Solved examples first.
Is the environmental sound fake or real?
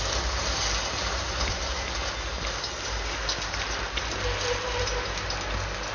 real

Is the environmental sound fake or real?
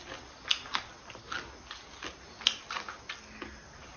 real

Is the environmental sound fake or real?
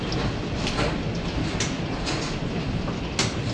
real